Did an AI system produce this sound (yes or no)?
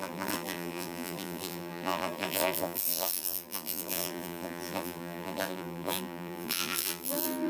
yes